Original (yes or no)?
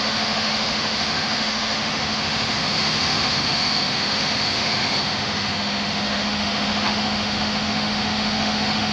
no